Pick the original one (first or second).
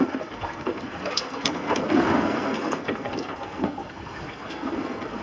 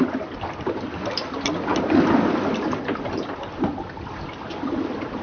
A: second